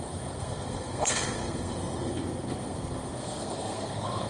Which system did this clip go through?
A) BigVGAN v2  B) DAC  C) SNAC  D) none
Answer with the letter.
C